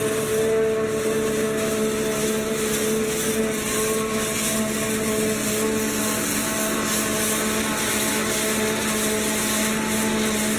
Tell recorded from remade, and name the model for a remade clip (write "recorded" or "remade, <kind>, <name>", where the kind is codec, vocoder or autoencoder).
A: recorded